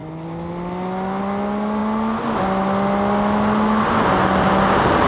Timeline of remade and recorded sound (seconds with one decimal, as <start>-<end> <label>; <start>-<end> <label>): 0.0-5.1 recorded